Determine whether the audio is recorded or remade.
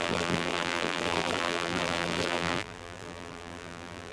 remade